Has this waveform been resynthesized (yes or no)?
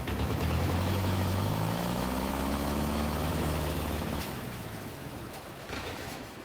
yes